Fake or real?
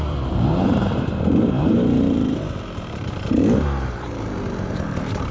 fake